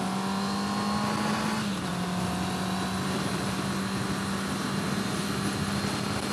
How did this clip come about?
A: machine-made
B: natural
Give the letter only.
B